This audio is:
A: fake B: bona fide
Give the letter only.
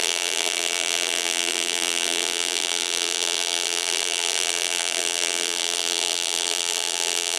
A